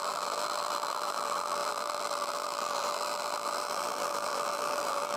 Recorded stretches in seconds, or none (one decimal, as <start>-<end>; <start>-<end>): none